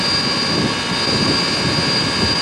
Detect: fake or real real